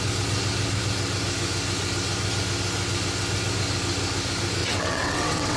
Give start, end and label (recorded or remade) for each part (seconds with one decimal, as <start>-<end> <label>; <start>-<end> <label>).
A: 0.0-4.6 recorded; 4.6-5.6 remade